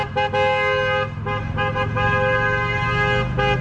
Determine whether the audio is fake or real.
real